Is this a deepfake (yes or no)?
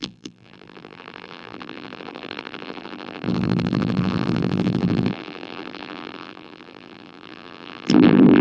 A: yes